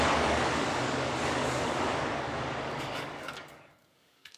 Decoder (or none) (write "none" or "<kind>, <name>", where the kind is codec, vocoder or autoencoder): codec, DAC